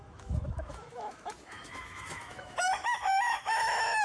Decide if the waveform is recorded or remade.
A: remade